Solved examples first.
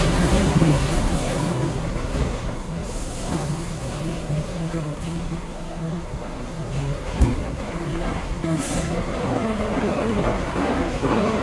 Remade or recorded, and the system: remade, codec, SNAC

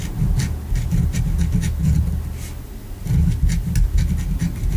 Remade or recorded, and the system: recorded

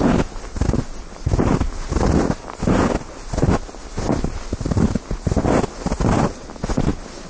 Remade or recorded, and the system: recorded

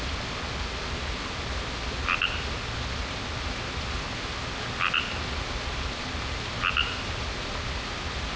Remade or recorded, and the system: recorded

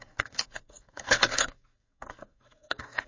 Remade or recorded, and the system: remade, codec, SNAC